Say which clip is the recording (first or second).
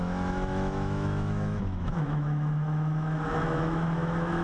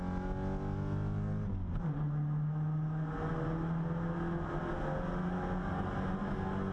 second